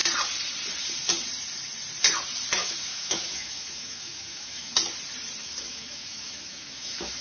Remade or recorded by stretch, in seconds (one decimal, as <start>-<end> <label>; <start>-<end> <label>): 0.0-2.6 recorded; 2.6-4.7 remade; 4.7-5.4 recorded; 5.4-7.2 remade

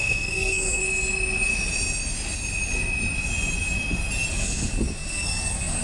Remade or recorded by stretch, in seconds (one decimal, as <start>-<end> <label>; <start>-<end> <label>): 0.0-0.8 remade; 0.8-4.3 recorded; 4.3-5.8 remade

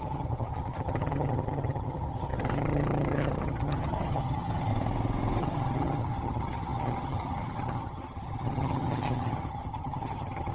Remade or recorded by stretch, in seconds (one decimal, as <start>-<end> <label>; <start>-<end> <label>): 0.0-4.7 remade; 4.7-5.4 recorded; 5.4-10.5 remade

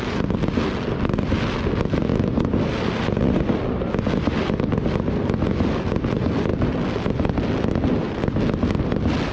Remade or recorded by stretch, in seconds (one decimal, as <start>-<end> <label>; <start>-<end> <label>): 0.0-9.3 recorded